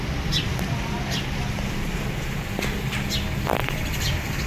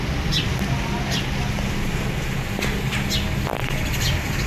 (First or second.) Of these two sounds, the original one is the second